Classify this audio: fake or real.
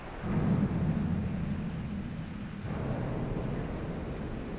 real